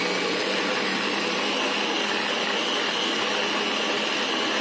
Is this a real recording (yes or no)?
yes